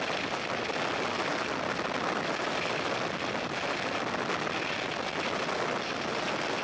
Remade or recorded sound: recorded